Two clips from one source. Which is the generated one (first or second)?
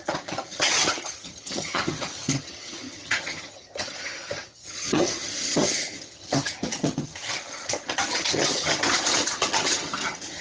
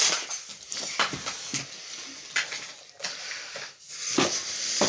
first